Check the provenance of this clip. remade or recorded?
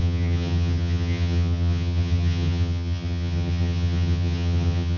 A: remade